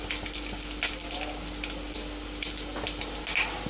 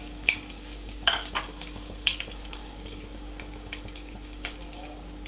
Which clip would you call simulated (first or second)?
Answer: second